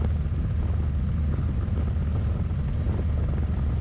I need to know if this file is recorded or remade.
recorded